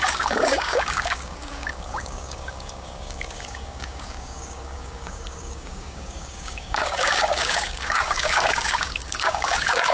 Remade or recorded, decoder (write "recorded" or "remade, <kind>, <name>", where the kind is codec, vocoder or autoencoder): remade, codec, DAC